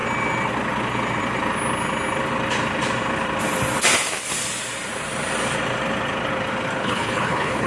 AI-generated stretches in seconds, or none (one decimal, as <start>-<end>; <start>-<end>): 6.8-7.7